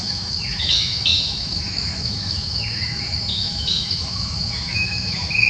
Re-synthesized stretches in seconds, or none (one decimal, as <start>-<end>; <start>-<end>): 0.0-5.5

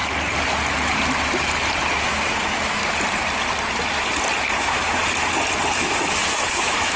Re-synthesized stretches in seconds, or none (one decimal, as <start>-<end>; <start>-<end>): 2.0-2.8; 4.6-5.0; 5.8-7.0

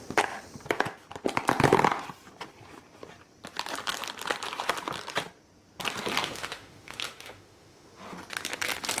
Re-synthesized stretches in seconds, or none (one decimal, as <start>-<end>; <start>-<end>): 6.2-8.0

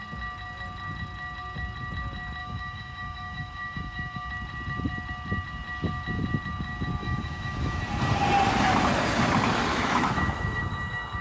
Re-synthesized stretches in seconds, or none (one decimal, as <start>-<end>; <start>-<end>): 2.4-4.3; 7.0-7.8; 9.7-10.6

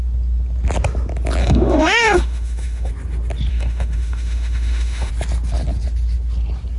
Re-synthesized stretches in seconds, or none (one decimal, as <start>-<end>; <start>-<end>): 1.4-2.9; 3.5-5.1

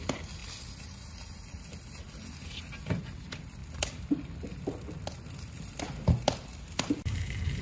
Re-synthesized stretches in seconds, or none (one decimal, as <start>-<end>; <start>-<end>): none